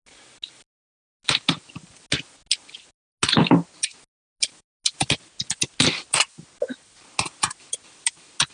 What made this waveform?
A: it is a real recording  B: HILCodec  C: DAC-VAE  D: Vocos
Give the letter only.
A